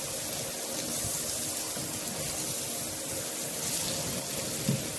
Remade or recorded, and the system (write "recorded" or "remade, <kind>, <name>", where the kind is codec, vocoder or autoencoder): recorded